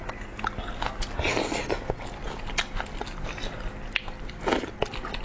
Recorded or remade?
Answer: recorded